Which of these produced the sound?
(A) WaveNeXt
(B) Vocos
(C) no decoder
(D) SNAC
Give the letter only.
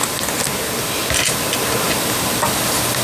C